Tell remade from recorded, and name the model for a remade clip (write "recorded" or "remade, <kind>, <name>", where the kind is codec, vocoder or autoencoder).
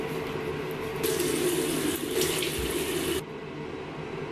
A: recorded